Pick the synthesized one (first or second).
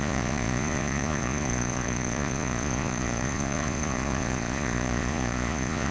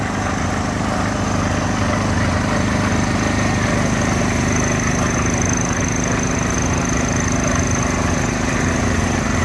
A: first